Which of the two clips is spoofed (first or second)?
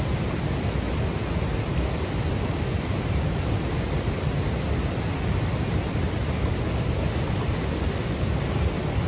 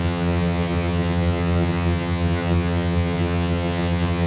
second